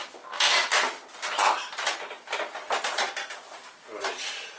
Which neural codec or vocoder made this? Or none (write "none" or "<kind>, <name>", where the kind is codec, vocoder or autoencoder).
none